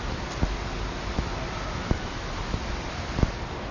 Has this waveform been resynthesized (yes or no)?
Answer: no